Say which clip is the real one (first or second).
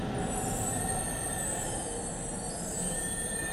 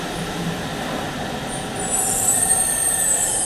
first